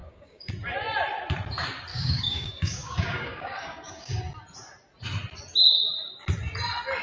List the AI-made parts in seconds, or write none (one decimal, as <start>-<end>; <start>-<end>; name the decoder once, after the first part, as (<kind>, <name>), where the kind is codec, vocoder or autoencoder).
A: 0.0-0.5 (codec, DAC); 1.9-4.2